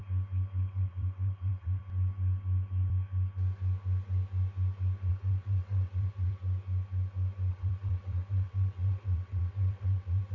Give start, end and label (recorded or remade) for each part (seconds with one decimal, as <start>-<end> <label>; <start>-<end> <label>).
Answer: 0.0-0.7 recorded; 0.7-1.8 remade; 1.8-5.1 recorded; 5.1-6.4 remade; 6.4-7.5 recorded; 7.5-10.3 remade